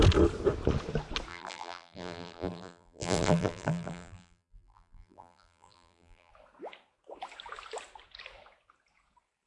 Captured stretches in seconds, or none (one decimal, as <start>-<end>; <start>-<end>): 0.0-1.3; 6.3-9.5